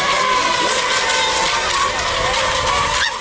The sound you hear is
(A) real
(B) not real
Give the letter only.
A